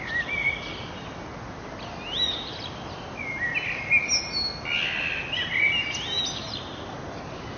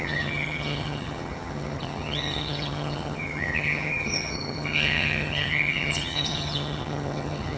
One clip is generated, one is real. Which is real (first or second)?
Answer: first